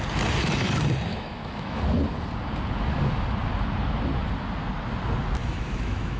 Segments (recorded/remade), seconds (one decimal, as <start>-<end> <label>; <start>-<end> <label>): 0.0-1.1 recorded; 1.1-1.8 remade; 1.8-5.4 recorded; 5.4-6.2 remade